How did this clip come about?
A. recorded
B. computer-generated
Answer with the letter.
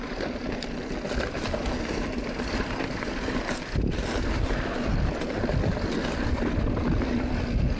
A